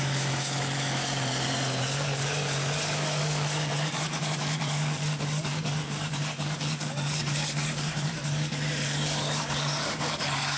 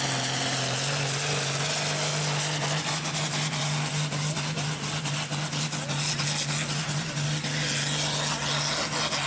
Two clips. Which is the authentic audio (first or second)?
second